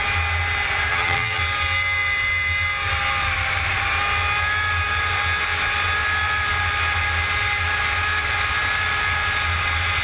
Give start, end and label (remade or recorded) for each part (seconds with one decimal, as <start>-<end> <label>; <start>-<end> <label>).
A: 0.0-0.9 recorded; 0.9-1.4 remade; 1.4-10.0 recorded

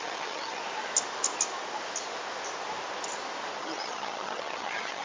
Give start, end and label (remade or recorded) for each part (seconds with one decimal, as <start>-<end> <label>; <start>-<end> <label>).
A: 0.0-0.6 remade; 0.6-3.6 recorded; 3.6-5.0 remade

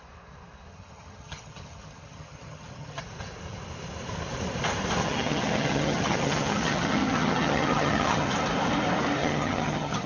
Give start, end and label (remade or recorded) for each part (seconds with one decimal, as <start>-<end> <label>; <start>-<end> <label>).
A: 0.0-0.7 recorded; 0.7-3.0 remade; 3.0-5.0 recorded; 5.0-8.3 remade; 8.3-9.2 recorded; 9.2-10.1 remade

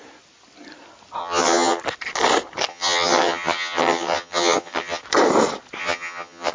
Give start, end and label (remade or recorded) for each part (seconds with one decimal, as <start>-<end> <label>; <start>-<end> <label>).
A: 0.0-1.2 recorded; 1.2-1.8 remade; 1.8-2.7 recorded; 2.7-5.0 remade; 5.0-5.8 recorded; 5.8-6.5 remade

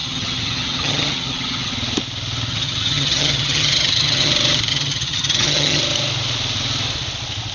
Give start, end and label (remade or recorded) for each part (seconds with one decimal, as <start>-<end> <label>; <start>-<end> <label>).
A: 0.0-1.7 remade; 1.7-2.5 recorded; 2.5-4.3 remade; 4.3-4.7 recorded; 4.7-5.8 remade; 5.8-7.5 recorded

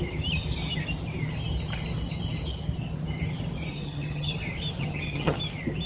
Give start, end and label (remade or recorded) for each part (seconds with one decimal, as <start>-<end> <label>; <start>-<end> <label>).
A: 0.0-3.7 recorded; 3.7-4.3 remade; 4.3-4.8 recorded; 4.8-5.4 remade; 5.4-5.9 recorded